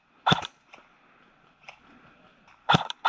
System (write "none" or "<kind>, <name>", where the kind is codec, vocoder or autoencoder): none